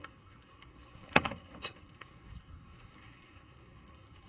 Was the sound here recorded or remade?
remade